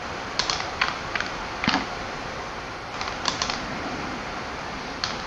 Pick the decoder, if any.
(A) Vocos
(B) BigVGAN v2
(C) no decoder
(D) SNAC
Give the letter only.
B